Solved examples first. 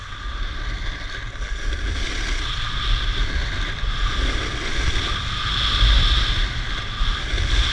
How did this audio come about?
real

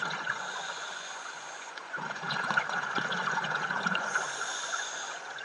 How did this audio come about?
fake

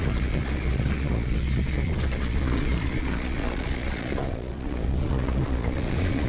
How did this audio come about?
fake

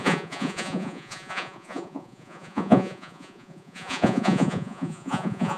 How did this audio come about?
fake